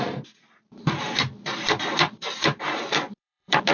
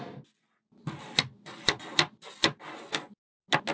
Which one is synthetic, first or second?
first